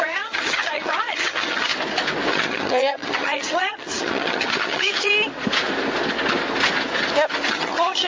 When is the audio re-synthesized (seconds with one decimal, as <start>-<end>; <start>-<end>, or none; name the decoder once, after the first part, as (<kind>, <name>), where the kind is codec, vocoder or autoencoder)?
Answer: 0.0-1.7 (vocoder, HiFi-GAN); 2.3-5.1; 7.5-8.1